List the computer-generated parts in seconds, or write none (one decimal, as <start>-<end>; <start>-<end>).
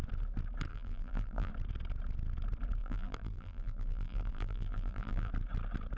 0.7-1.5; 2.8-5.3